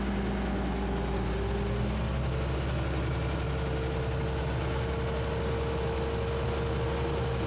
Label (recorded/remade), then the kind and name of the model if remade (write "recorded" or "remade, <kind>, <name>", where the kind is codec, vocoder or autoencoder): recorded